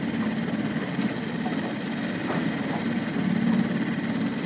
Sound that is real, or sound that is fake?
real